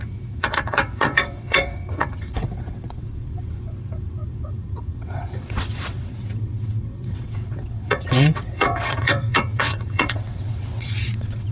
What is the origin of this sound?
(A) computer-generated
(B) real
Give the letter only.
A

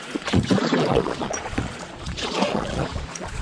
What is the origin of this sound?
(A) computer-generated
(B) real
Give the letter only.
A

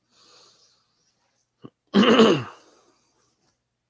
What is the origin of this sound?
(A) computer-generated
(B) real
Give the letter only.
B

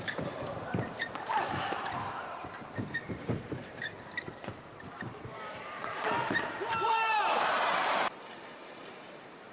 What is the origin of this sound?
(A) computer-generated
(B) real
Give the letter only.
A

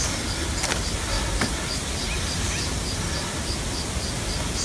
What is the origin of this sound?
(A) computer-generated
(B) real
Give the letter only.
B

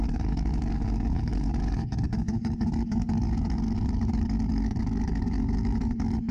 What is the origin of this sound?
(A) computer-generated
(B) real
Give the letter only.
A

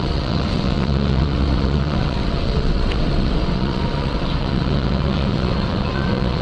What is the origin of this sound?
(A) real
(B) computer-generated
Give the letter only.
B